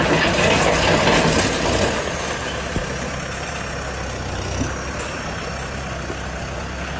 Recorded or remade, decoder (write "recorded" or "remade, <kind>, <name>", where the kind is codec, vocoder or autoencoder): recorded